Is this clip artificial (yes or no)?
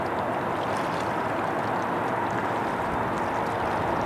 no